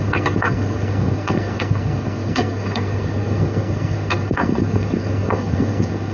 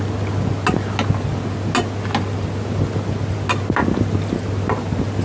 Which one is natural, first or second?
second